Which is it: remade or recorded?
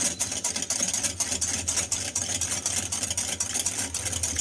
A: recorded